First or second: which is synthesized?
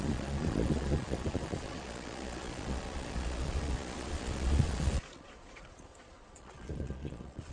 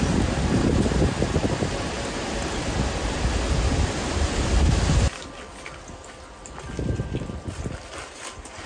first